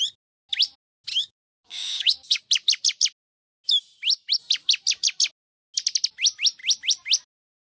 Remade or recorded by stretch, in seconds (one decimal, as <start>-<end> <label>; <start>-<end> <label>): 0.0-1.1 recorded; 1.1-2.4 remade; 2.4-7.7 recorded